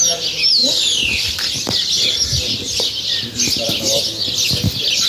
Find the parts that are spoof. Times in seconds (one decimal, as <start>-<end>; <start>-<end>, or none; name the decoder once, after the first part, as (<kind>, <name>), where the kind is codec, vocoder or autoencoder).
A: none